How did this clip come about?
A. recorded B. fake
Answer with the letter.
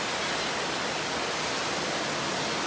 A